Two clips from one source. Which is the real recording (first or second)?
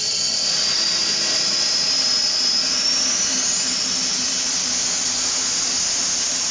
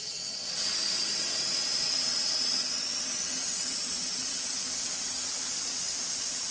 first